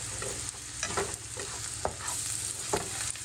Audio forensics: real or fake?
real